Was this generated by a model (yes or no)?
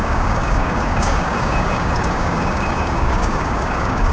yes